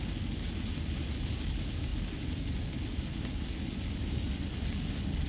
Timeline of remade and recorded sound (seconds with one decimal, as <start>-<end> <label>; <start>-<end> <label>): 0.0-5.3 recorded